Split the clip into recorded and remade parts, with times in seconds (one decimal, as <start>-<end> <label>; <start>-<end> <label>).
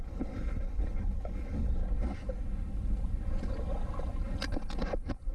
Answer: 0.0-1.8 remade; 1.8-5.3 recorded